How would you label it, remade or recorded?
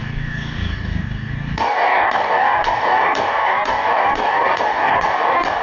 remade